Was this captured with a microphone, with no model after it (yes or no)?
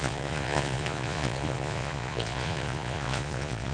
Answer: no